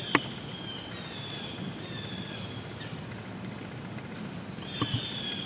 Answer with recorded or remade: remade